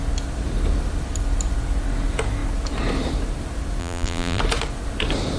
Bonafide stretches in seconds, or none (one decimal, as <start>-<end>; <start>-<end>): 0.0-3.8; 4.4-5.4